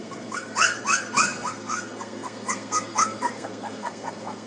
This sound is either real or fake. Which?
fake